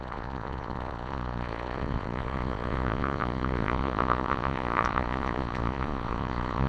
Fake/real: fake